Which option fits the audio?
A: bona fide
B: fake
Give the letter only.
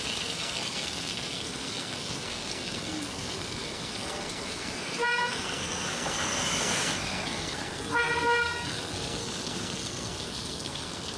B